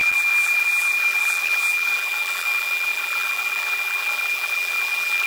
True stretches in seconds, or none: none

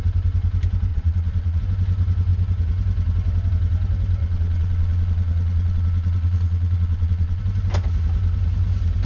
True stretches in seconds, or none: 0.0-0.9; 1.6-4.2; 7.4-9.1

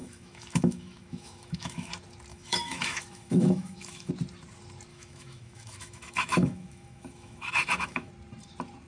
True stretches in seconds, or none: 1.9-2.3; 4.1-4.9; 8.1-8.9